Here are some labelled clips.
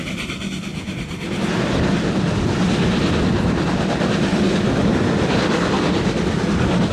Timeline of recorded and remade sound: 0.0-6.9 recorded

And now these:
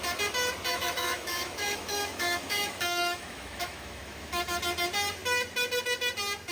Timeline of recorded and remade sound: 0.0-0.7 recorded; 0.7-4.6 remade; 4.6-6.5 recorded

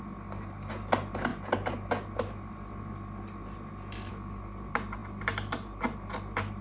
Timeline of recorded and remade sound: 0.0-6.6 recorded